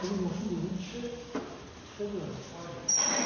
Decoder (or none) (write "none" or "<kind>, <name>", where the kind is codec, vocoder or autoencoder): none